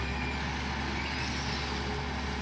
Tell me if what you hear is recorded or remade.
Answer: recorded